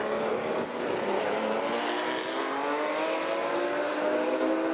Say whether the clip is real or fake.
real